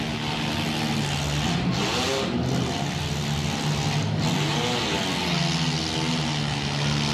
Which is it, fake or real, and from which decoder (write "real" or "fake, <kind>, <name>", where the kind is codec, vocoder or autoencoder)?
real